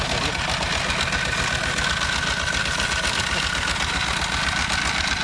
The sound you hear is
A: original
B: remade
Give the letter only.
A